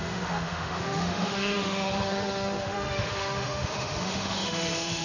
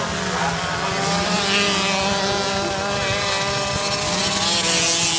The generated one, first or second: first